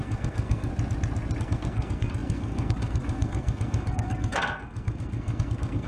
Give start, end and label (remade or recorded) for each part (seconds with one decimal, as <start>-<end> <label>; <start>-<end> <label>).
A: 0.0-0.7 remade; 0.7-1.4 recorded; 1.4-5.9 remade